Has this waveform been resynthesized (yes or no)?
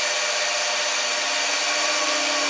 no